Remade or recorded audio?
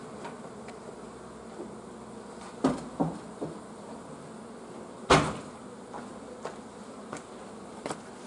recorded